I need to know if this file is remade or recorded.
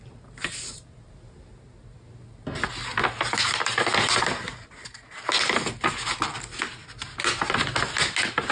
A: recorded